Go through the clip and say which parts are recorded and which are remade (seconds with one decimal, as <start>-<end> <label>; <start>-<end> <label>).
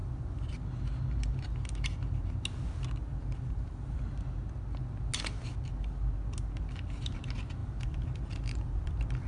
0.0-0.8 remade; 0.8-3.0 recorded; 3.0-4.0 remade; 4.0-7.6 recorded; 7.6-9.3 remade